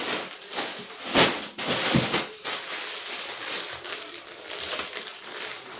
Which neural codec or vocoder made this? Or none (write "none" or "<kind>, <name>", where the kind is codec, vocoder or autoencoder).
none